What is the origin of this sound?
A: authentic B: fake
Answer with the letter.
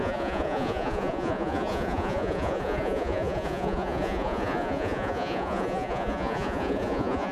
B